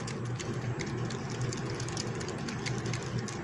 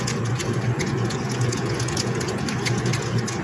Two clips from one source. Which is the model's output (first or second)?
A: second